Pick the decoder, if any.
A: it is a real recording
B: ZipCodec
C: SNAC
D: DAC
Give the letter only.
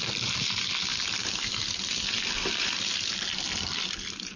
A